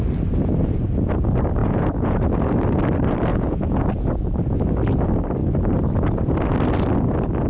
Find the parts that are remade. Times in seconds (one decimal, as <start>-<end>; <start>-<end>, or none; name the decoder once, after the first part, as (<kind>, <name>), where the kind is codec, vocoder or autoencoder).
1.6-2.4 (vocoder, Vocos); 3.3-3.9